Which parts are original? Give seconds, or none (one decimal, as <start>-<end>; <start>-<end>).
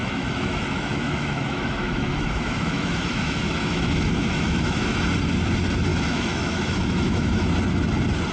5.0-5.9; 7.4-8.3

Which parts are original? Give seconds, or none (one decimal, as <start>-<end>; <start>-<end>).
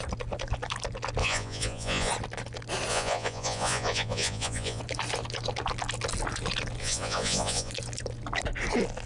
0.0-1.2; 2.1-2.9; 4.8-6.8; 7.7-9.1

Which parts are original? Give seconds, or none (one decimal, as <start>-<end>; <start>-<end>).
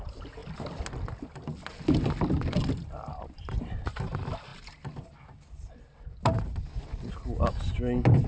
0.0-8.3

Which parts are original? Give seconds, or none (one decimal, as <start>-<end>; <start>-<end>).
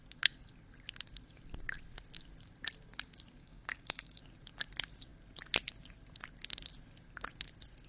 0.0-3.4; 4.2-7.9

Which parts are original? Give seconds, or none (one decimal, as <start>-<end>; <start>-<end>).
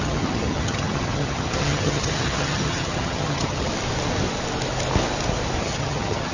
3.7-5.6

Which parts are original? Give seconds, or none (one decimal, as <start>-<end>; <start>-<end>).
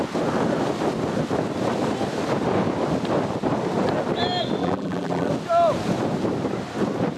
0.0-4.6; 5.3-7.2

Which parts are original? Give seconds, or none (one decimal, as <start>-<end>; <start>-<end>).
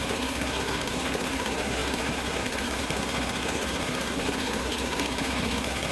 none